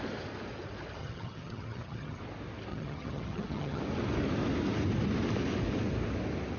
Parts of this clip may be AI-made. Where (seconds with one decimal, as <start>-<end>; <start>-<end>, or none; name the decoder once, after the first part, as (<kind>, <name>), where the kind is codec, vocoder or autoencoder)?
1.0-2.2 (vocoder, HiFi-GAN); 2.7-3.8